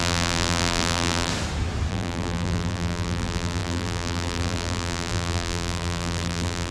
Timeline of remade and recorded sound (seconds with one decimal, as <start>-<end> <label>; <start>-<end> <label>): 0.0-1.3 remade; 1.3-1.9 recorded; 1.9-6.7 remade